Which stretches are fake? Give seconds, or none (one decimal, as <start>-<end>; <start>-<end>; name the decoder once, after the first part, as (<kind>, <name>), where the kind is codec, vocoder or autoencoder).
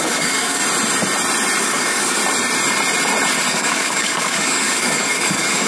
0.0-0.6 (codec, DAC); 1.6-2.2; 3.5-5.7